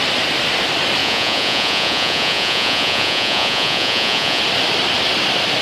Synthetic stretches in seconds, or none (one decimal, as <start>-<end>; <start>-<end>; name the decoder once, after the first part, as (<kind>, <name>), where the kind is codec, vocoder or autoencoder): 1.0-4.4 (vocoder, Vocos)